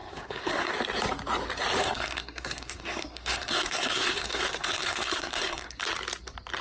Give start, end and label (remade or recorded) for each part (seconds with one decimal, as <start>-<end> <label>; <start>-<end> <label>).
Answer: 0.0-0.7 remade; 0.7-1.8 recorded; 1.8-5.8 remade; 5.8-6.6 recorded